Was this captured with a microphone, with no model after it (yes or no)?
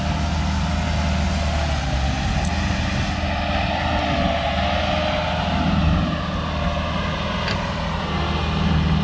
yes